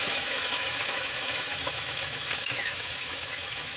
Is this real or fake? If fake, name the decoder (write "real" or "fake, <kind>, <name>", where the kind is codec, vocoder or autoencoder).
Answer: fake, autoencoder, DAC-VAE